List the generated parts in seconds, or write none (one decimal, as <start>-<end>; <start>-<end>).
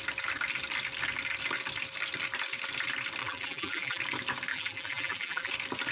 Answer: 3.2-4.0; 4.5-5.5